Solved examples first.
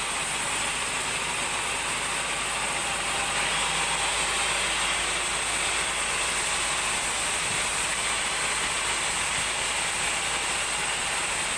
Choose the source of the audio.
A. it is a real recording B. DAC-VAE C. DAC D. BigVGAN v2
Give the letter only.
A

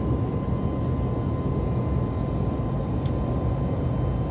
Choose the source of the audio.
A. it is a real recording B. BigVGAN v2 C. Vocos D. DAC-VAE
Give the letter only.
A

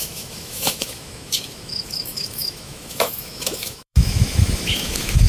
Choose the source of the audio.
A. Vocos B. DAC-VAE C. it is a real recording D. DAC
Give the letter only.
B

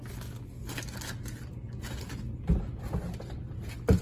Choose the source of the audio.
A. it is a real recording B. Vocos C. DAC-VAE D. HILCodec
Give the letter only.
A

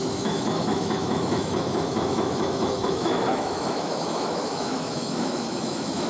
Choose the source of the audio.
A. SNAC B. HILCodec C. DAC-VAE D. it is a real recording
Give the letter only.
C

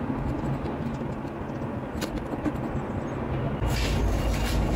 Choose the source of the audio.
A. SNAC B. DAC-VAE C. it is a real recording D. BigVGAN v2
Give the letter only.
C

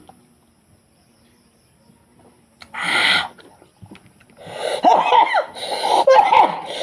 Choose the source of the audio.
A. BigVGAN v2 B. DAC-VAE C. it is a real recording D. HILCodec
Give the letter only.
C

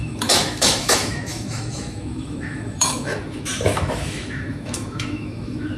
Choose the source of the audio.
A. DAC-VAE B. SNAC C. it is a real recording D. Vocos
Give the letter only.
A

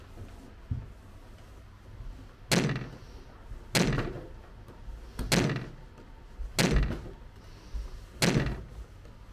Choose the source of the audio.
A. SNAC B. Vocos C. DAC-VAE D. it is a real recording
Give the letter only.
D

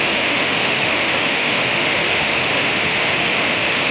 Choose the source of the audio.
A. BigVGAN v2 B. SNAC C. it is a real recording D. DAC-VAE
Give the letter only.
D